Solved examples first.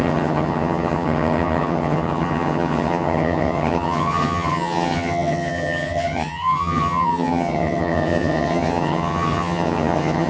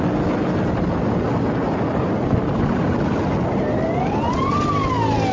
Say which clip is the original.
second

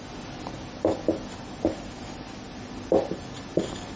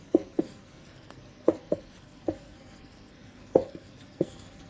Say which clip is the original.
first